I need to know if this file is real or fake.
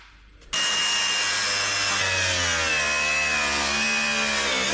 real